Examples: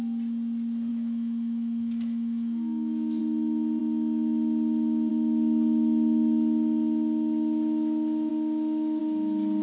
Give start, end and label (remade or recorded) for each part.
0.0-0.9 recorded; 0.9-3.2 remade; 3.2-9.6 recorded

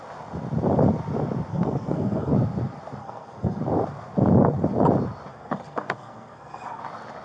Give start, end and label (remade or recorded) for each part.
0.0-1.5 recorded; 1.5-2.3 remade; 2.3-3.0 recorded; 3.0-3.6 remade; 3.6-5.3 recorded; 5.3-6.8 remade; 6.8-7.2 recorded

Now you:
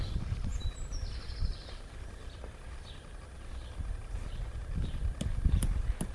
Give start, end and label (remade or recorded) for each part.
0.0-0.5 remade; 0.5-1.8 recorded; 1.8-2.2 remade; 2.2-6.1 recorded

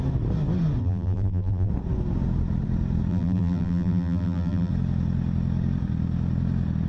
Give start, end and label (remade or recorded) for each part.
0.0-0.8 recorded; 0.8-1.7 remade; 1.7-3.1 recorded; 3.1-4.7 remade; 4.7-6.9 recorded

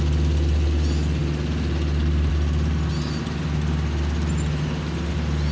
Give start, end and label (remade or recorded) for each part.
0.0-5.5 recorded